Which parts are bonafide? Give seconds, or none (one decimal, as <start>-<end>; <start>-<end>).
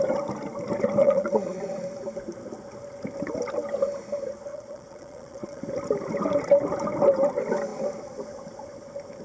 0.0-1.0; 1.6-4.5; 5.6-9.2